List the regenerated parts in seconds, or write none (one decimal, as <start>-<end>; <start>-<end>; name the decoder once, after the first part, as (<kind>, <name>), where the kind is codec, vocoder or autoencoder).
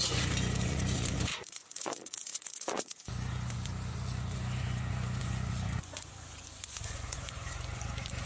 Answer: 0.0-8.3 (vocoder, Vocos)